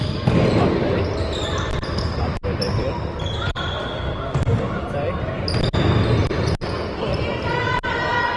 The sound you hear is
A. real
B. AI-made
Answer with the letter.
A